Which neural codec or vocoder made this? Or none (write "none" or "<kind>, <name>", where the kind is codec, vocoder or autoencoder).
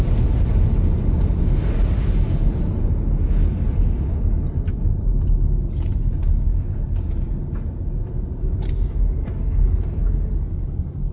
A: none